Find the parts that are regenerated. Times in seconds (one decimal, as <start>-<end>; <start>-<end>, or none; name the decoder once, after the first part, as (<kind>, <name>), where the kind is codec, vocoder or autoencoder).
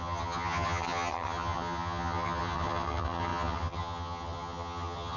0.0-5.2 (vocoder, HiFi-GAN)